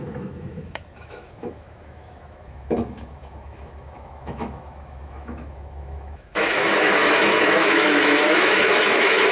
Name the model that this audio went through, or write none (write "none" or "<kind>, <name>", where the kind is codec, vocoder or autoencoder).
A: autoencoder, DAC-VAE